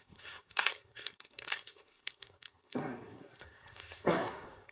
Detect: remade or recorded remade